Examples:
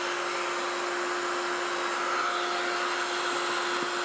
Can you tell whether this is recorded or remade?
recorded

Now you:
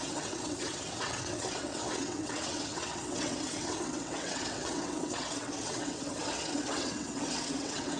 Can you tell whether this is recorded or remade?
remade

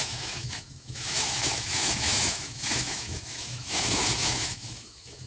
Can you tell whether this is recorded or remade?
remade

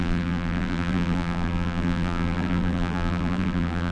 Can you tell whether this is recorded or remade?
remade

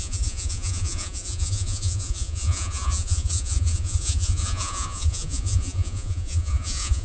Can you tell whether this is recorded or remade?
remade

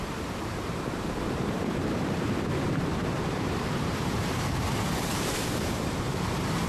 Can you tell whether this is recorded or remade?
remade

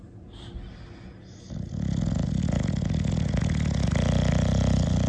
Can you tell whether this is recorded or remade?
recorded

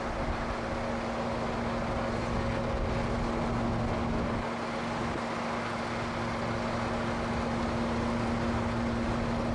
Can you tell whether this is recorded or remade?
recorded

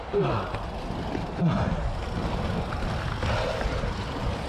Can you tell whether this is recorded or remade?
recorded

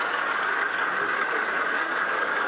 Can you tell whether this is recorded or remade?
remade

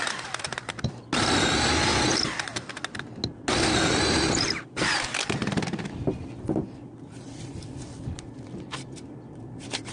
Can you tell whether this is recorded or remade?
recorded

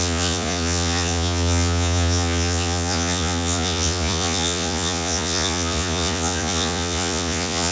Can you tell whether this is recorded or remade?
remade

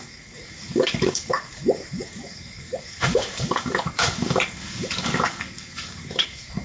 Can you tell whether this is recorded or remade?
remade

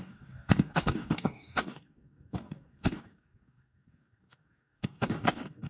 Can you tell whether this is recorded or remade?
remade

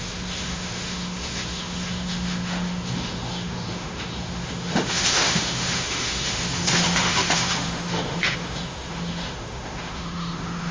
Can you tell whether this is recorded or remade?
remade